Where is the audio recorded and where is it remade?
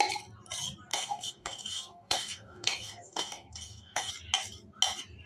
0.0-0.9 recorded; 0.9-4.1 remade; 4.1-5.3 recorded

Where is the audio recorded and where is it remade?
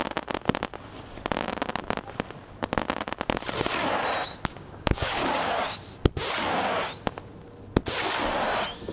0.0-4.5 recorded; 4.5-5.5 remade; 5.5-8.9 recorded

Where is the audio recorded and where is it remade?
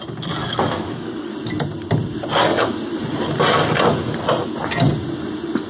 0.0-0.4 recorded; 0.4-1.3 remade; 1.3-5.7 recorded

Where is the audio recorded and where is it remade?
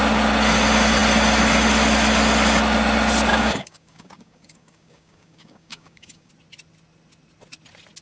0.0-3.3 recorded; 3.3-6.3 remade; 6.3-8.0 recorded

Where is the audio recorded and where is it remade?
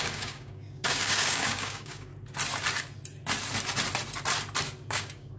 0.0-2.1 remade; 2.1-4.9 recorded; 4.9-5.4 remade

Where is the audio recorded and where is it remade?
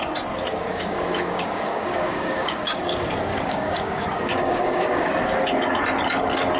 0.0-0.7 recorded; 0.7-2.8 remade; 2.8-3.3 recorded; 3.3-5.1 remade; 5.1-6.6 recorded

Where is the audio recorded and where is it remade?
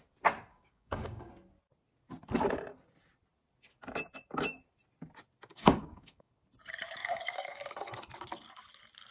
0.0-0.5 recorded; 0.5-1.3 remade; 1.3-5.5 recorded; 5.5-6.3 remade; 6.3-7.0 recorded; 7.0-7.7 remade; 7.7-9.1 recorded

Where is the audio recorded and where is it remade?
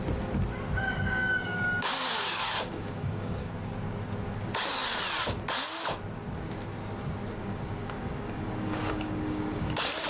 0.0-1.2 recorded; 1.2-3.5 remade; 3.5-7.4 recorded; 7.4-9.7 remade; 9.7-10.1 recorded